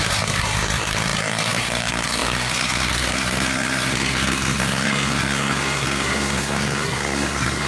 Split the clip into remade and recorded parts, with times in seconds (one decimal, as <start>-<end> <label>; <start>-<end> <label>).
0.0-7.7 remade

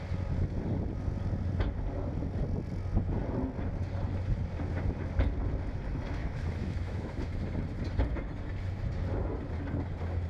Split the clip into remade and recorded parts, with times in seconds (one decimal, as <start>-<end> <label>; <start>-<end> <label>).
0.0-6.2 recorded; 6.2-7.2 remade; 7.2-10.3 recorded

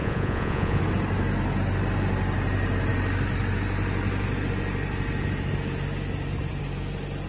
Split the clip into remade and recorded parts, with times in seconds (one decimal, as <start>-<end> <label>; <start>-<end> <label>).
0.0-0.8 remade; 0.8-7.3 recorded